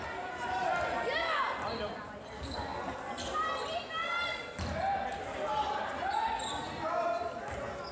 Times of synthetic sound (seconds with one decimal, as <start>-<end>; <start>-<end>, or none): none